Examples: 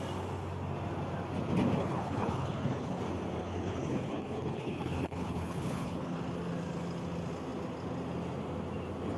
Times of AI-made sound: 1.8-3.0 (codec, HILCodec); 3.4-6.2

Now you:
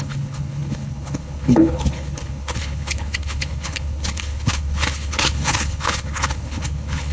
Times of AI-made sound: 0.0-7.1 (codec, HILCodec)

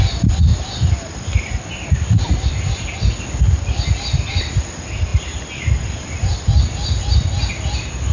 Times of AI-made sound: none

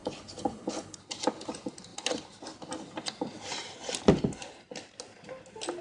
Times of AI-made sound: 0.0-1.0 (codec, HILCodec)

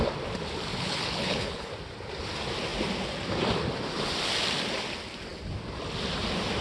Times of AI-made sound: 0.7-1.7 (codec, HILCodec)

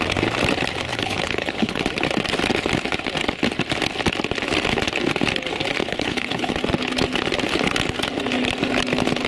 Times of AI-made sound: 0.9-1.8 (codec, HILCodec); 5.8-6.5

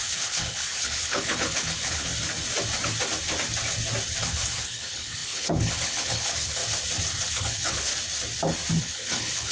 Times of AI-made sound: 0.0-2.1 (codec, HILCodec); 4.2-6.6; 7.3-7.9; 8.8-9.5

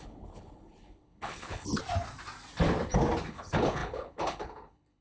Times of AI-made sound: 0.0-1.8 (codec, HILCodec); 3.3-5.0